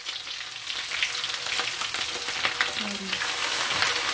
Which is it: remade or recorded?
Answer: recorded